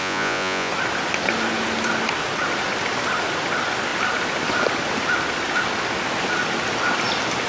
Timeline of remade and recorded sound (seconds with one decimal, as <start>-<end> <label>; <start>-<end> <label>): 0.0-0.7 remade; 0.7-7.5 recorded